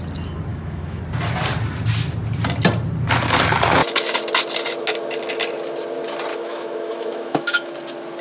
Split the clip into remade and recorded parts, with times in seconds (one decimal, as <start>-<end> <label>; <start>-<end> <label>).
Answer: 0.0-0.5 recorded; 0.5-1.0 remade; 1.0-6.3 recorded; 6.3-7.7 remade; 7.7-8.2 recorded